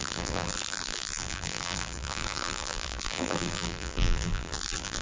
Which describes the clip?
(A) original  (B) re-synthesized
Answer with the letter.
B